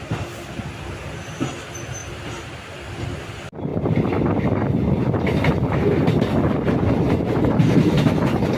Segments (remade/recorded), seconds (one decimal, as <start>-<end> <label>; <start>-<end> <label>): 0.0-2.0 recorded; 2.0-3.2 remade; 3.2-8.6 recorded

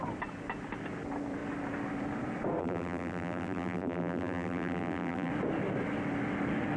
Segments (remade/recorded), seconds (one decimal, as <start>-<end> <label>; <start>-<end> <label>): 0.0-2.6 recorded; 2.6-5.3 remade; 5.3-6.8 recorded

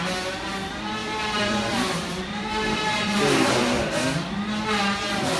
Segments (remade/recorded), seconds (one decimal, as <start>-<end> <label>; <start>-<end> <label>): 0.0-1.0 recorded; 1.0-3.5 remade; 3.5-5.4 recorded

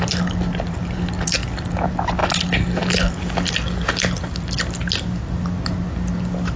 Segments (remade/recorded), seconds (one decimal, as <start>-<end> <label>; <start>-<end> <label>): 0.0-6.6 recorded

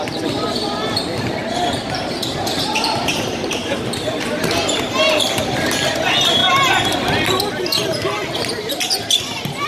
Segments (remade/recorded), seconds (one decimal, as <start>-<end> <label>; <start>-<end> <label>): 0.0-1.4 recorded; 1.4-4.4 remade; 4.4-9.7 recorded